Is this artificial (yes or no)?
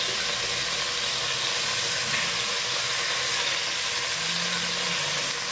no